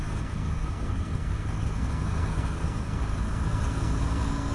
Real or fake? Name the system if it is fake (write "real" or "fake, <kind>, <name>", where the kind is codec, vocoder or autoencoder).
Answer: fake, codec, SNAC